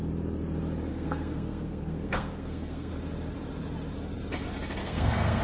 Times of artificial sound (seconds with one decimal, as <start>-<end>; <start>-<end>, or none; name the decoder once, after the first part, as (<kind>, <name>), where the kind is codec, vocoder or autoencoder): 0.9-2.9 (codec, SNAC); 4.8-5.4